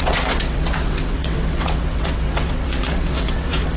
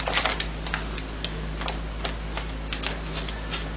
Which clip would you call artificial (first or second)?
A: first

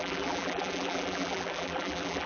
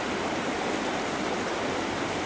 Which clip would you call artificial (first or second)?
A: first